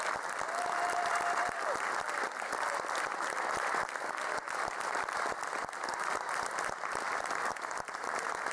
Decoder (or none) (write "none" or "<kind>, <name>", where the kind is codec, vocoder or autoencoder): none